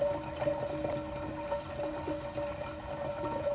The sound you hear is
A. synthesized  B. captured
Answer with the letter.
B